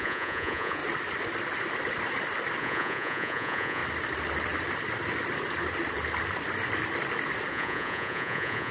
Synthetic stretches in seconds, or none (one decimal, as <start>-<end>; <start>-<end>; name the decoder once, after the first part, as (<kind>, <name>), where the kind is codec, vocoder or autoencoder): 0.0-0.8 (vocoder, Vocos); 2.6-3.8; 7.5-8.7